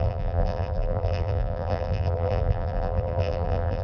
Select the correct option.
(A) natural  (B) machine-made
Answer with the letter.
B